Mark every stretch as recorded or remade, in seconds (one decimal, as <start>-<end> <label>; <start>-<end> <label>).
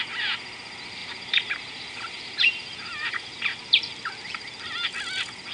0.0-1.0 recorded; 1.0-4.3 remade; 4.3-5.5 recorded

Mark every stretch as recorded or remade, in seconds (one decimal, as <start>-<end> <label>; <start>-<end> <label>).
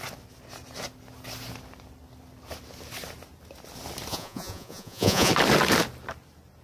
0.0-4.1 recorded; 4.1-5.3 remade; 5.3-6.6 recorded